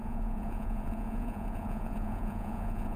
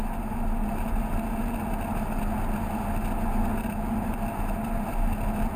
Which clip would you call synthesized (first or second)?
first